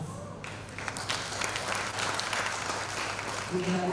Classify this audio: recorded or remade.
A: remade